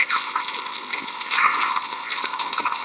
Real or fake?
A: fake